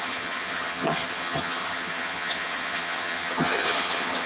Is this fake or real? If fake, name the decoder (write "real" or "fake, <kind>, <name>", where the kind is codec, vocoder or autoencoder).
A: fake, vocoder, HiFi-GAN